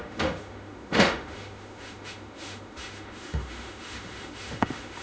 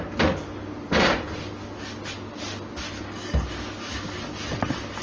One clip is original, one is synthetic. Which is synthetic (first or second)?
first